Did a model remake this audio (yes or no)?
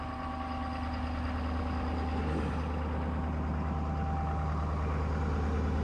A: no